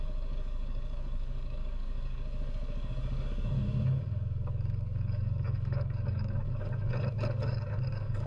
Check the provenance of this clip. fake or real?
fake